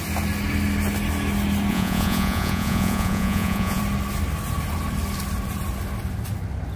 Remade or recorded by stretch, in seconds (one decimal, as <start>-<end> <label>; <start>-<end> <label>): 0.0-1.7 recorded; 1.7-3.8 remade; 3.8-6.8 recorded